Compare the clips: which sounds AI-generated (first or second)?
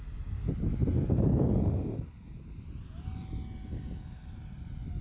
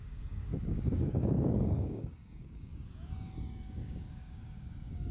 second